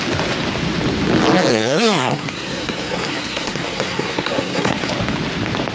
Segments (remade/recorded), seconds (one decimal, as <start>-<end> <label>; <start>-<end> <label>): 0.0-1.5 recorded; 1.5-4.9 remade; 4.9-5.7 recorded